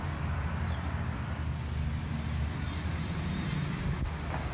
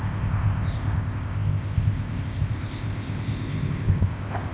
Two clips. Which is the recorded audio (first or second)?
first